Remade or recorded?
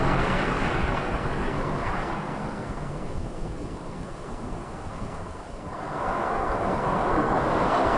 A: remade